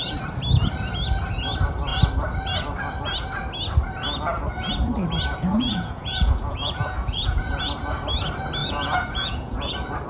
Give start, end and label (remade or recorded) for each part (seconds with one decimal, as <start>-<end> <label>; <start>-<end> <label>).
0.0-5.5 recorded; 5.5-7.6 remade; 7.6-8.6 recorded; 8.6-9.7 remade; 9.7-10.1 recorded